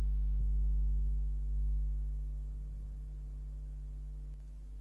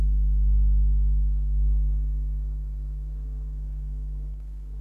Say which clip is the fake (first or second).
second